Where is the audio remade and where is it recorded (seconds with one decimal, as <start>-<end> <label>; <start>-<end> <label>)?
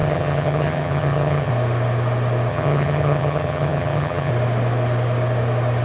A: 0.0-1.5 remade; 1.5-2.5 recorded; 2.5-4.3 remade; 4.3-5.8 recorded